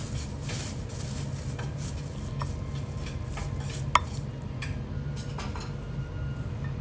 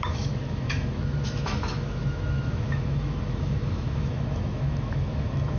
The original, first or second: first